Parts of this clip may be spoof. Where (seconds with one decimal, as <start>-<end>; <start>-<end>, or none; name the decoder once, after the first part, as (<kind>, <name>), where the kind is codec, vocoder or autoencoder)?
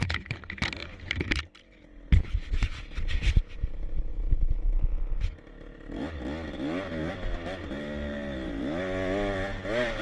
0.8-1.5 (vocoder, BigVGAN v2); 7.6-8.6